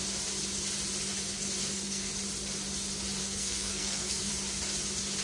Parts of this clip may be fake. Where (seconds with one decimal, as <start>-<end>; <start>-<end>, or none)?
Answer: 1.6-2.1; 3.2-4.3